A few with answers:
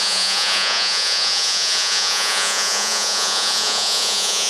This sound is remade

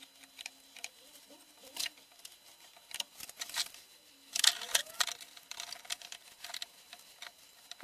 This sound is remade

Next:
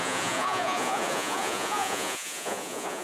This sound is remade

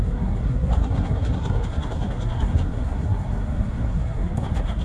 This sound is remade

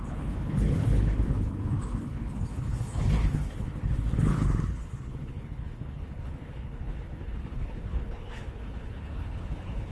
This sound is remade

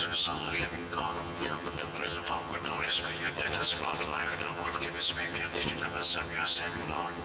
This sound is remade